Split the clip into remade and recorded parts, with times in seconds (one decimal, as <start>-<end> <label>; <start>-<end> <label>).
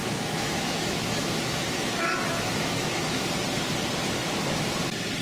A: 0.0-3.1 remade; 3.1-4.2 recorded; 4.2-4.7 remade; 4.7-5.2 recorded